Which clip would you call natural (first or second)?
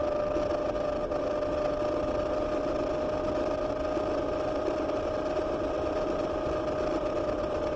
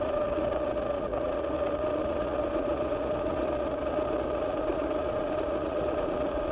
first